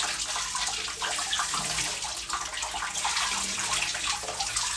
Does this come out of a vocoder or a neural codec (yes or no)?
no